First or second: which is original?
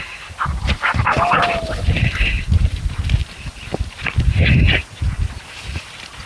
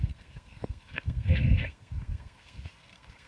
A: first